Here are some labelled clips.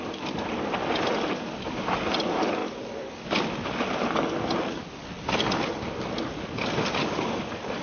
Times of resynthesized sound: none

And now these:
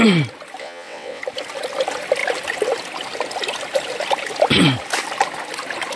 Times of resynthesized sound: 0.6-1.2 (vocoder, WaveNeXt)

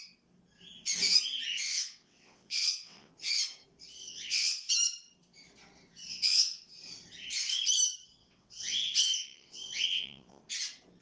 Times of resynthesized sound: 1.7-3.1 (vocoder, WaveNeXt); 4.0-4.7; 6.1-6.7; 8.2-10.4

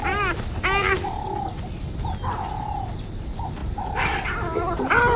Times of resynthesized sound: none